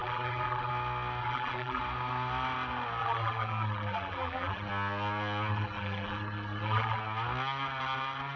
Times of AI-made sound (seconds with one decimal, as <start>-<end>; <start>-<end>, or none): 0.0-0.7; 1.2-1.8; 3.0-4.7; 5.5-7.0